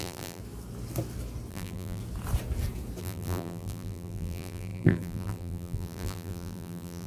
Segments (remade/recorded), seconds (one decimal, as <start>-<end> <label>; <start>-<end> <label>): 0.0-0.4 remade; 0.4-1.5 recorded; 1.5-2.0 remade; 2.0-3.0 recorded; 3.0-7.1 remade